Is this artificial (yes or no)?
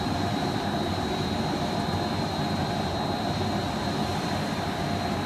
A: yes